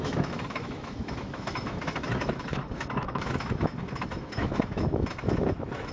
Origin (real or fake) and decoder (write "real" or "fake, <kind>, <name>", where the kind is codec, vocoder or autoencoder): fake, autoencoder, DAC-VAE